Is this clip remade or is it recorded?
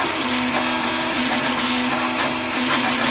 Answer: recorded